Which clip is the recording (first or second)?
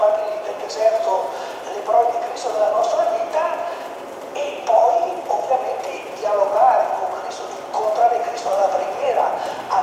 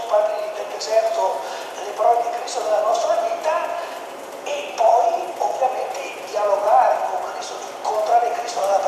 second